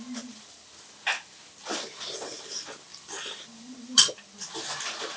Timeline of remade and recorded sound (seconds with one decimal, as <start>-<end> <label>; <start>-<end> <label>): 0.0-1.6 recorded; 1.6-2.5 remade; 2.5-2.9 recorded; 2.9-4.0 remade; 4.0-5.2 recorded